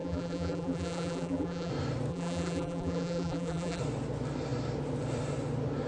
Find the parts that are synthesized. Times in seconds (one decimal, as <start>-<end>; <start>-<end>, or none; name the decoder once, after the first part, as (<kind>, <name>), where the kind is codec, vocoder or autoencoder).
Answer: 0.0-1.7 (vocoder, BigVGAN v2); 2.1-3.8

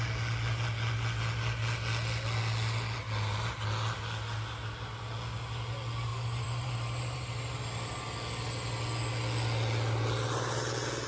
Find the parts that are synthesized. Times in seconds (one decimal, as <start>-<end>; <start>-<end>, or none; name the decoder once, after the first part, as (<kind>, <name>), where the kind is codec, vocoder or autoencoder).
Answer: 6.1-7.6 (vocoder, BigVGAN v2)

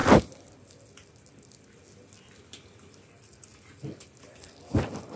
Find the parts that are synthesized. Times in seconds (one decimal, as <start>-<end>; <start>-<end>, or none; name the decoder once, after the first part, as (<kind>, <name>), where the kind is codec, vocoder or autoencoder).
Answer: none

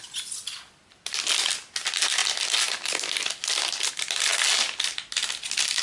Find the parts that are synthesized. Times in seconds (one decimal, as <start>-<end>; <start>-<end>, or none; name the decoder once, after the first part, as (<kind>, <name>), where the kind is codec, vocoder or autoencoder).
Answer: none